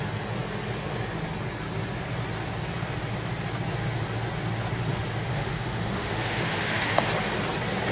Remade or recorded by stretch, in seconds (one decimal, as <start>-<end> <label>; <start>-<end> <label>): 0.0-5.3 recorded; 5.3-7.1 remade; 7.1-7.9 recorded